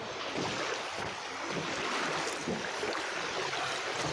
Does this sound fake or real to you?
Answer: real